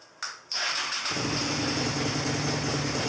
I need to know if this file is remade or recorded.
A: recorded